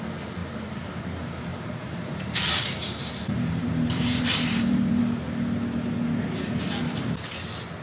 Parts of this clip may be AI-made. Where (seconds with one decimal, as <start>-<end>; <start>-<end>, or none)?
0.4-1.0; 1.5-5.0